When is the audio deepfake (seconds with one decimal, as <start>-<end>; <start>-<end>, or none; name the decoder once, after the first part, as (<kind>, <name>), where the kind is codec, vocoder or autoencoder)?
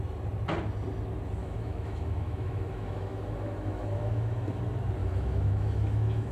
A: 1.4-4.6 (autoencoder, DAC-VAE); 5.0-6.3